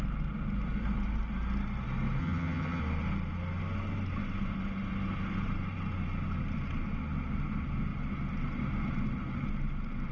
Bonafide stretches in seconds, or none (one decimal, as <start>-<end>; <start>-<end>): 0.0-2.2; 2.8-10.1

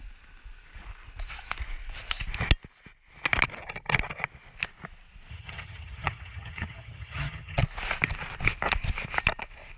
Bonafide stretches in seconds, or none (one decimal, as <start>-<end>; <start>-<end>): 0.0-5.3; 7.6-9.8

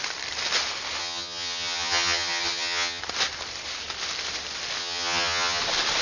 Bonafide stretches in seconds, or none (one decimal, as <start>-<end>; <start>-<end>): 0.0-1.0; 3.0-4.8; 5.6-6.0

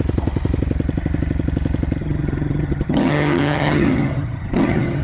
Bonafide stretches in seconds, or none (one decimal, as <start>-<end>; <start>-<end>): 0.0-2.0